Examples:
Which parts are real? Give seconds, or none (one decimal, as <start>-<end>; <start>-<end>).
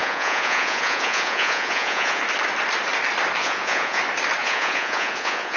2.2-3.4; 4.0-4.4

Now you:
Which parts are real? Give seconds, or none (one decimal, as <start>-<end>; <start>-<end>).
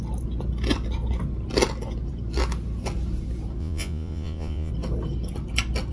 0.0-3.6; 4.7-5.9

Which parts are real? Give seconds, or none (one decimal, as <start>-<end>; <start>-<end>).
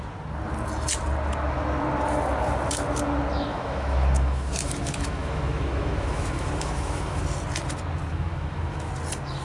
0.0-3.5; 7.2-8.1; 8.9-9.4